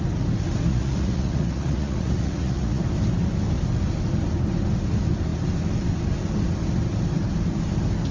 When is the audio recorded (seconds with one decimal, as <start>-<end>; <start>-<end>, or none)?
0.0-0.7; 2.8-8.1